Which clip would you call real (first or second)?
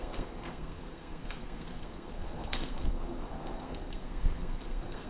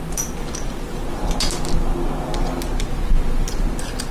second